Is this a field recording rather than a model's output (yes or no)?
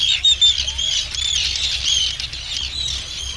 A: yes